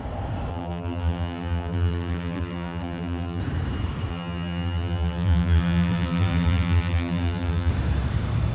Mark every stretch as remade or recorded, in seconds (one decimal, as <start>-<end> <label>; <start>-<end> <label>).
0.0-0.5 recorded; 0.5-3.4 remade; 3.4-4.1 recorded; 4.1-7.7 remade; 7.7-8.5 recorded

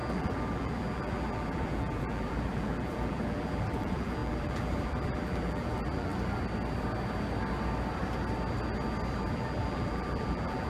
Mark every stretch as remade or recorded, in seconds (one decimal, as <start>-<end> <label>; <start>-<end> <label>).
0.0-6.1 remade; 6.1-9.2 recorded; 9.2-10.7 remade

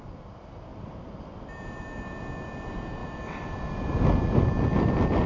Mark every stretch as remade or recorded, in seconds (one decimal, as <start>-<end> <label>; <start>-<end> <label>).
0.0-0.7 recorded; 0.7-2.2 remade; 2.2-3.0 recorded; 3.0-4.1 remade; 4.1-5.3 recorded